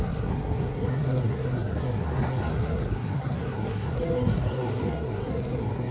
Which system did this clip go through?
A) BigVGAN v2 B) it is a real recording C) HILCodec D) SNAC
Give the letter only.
D